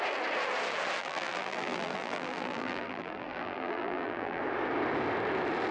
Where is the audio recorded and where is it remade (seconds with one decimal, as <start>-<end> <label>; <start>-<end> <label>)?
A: 0.0-1.0 recorded; 1.0-4.4 remade; 4.4-5.7 recorded